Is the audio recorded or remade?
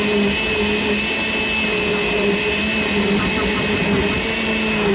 recorded